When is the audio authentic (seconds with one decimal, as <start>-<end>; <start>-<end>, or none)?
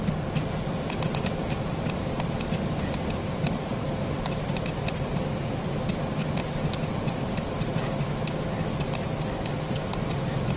0.0-3.7; 5.5-10.6